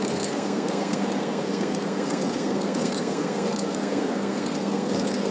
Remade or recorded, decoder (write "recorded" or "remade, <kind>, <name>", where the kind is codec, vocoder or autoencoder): remade, codec, SNAC